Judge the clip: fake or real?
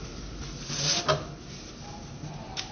real